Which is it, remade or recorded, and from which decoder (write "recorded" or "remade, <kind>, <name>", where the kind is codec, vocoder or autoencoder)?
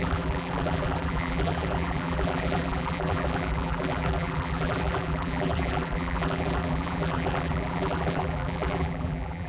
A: remade, vocoder, BigVGAN v2